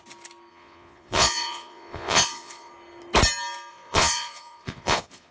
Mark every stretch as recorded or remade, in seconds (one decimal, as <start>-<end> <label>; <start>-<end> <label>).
0.0-0.5 recorded; 0.5-2.7 remade; 2.7-3.7 recorded; 3.7-5.3 remade